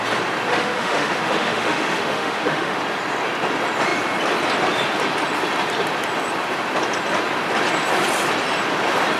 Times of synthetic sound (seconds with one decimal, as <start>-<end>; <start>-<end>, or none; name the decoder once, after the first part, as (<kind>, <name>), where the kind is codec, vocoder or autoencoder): 0.5-2.8 (autoencoder, DAC-VAE)